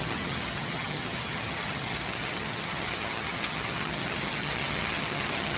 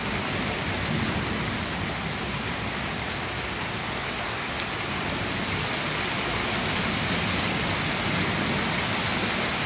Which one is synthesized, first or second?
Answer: first